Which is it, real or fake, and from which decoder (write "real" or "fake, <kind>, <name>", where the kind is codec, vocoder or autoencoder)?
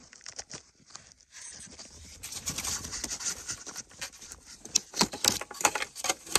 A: fake, vocoder, BigVGAN v2